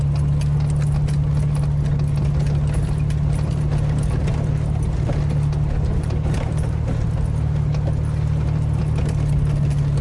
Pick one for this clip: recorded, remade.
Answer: recorded